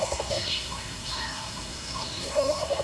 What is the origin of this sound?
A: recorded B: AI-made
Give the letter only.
B